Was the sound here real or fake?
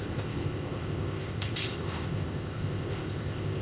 fake